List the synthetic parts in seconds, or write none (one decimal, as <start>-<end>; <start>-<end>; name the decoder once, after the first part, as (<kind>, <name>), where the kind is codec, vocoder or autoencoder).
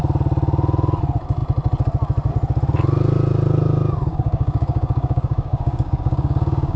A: 4.1-6.8 (codec, DAC)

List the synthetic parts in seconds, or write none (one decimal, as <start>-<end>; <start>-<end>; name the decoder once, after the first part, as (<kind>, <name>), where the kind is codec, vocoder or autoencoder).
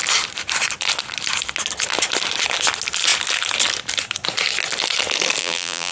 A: 5.4-5.9 (vocoder, BigVGAN v2)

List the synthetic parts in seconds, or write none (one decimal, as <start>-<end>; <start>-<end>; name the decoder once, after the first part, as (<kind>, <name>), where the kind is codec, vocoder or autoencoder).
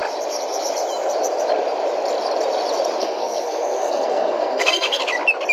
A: 3.0-5.0 (codec, SNAC)